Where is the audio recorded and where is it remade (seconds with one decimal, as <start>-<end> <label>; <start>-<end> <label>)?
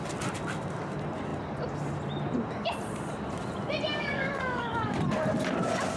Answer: 0.0-3.9 recorded; 3.9-5.0 remade; 5.0-6.0 recorded